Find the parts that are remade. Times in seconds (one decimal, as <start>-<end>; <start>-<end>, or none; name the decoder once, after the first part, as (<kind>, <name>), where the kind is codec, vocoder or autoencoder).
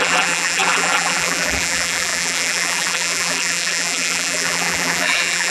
0.0-5.5 (vocoder, BigVGAN v2)